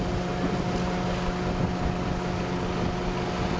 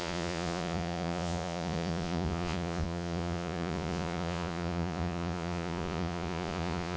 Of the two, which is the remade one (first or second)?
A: second